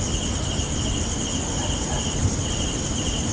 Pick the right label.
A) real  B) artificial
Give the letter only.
A